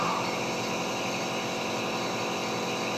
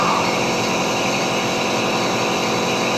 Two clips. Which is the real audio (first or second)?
first